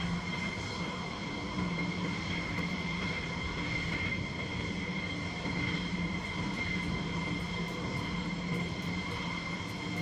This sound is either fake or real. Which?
fake